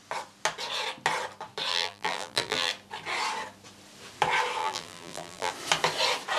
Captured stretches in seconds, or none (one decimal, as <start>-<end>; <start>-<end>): 0.0-1.7; 2.7-4.6; 5.5-6.4